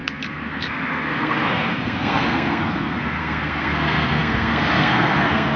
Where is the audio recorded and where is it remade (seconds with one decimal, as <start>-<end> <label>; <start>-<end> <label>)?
0.0-5.6 remade